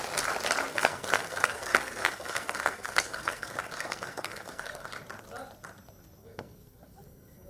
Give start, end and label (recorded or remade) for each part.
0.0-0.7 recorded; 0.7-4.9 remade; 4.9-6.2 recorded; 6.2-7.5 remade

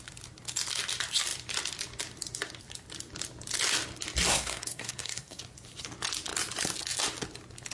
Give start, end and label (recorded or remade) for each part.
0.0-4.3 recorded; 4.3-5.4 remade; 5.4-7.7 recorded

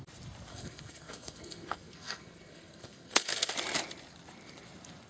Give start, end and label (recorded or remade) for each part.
0.0-0.5 recorded; 0.5-3.5 remade; 3.5-5.1 recorded

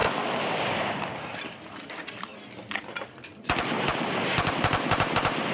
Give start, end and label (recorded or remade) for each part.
0.0-5.5 recorded

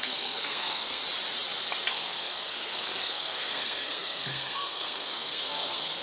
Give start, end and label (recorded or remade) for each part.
0.0-1.0 remade; 1.0-1.9 recorded; 1.9-6.0 remade

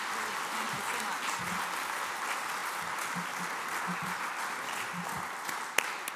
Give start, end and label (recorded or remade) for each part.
0.0-6.2 recorded